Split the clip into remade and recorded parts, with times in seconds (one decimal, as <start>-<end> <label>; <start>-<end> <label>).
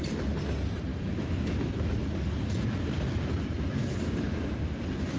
0.0-0.9 recorded; 0.9-1.9 remade; 1.9-3.8 recorded; 3.8-4.5 remade; 4.5-5.2 recorded